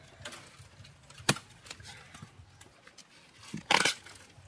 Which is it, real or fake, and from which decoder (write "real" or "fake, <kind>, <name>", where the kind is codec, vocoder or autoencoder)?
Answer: real